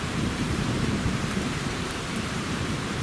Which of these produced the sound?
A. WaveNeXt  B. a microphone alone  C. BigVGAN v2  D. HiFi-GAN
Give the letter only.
C